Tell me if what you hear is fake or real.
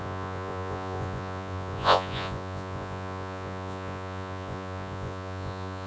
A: fake